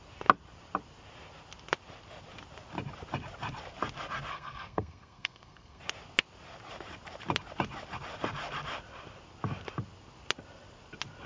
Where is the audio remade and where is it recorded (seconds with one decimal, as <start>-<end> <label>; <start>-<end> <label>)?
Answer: 0.0-4.3 recorded; 4.3-5.8 remade; 5.8-11.3 recorded